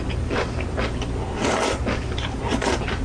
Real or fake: real